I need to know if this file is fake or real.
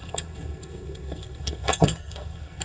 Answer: fake